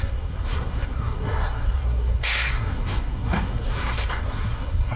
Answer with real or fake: fake